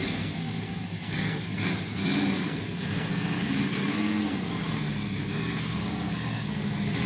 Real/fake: fake